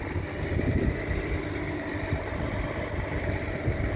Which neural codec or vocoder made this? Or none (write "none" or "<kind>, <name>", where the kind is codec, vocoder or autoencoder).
none